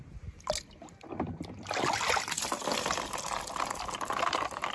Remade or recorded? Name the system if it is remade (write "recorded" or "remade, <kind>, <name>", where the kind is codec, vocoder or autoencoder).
recorded